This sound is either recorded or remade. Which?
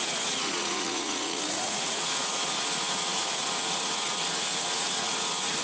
remade